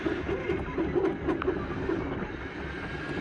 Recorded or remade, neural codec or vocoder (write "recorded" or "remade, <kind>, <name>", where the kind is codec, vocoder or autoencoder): remade, vocoder, BigVGAN v2